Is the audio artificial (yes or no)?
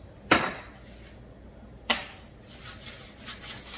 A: no